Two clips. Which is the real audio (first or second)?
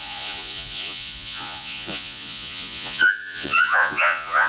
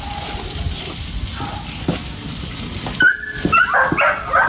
second